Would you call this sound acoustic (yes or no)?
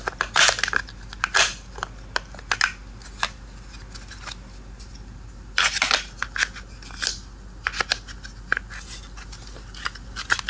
yes